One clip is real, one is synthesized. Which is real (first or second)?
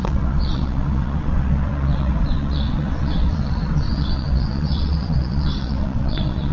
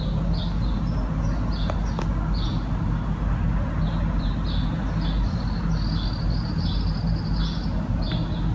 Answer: second